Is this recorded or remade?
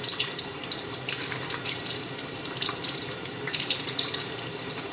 remade